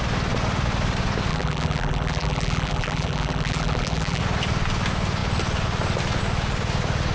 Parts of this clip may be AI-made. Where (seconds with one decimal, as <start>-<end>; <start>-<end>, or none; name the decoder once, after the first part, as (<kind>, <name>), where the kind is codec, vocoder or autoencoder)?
1.3-4.2 (vocoder, BigVGAN v2)